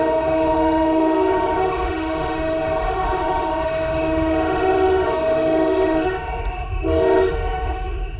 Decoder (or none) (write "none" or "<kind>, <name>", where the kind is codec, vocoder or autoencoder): autoencoder, DAC-VAE